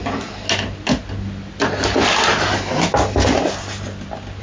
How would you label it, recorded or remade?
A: recorded